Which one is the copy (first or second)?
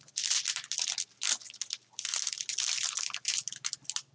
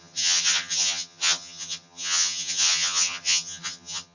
second